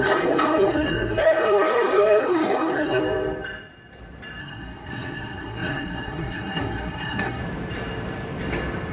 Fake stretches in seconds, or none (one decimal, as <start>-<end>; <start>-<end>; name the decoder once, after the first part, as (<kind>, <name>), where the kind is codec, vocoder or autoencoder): 0.0-3.0 (codec, SNAC); 4.4-7.4